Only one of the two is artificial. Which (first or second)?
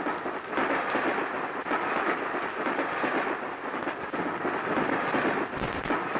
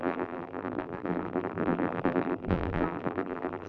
second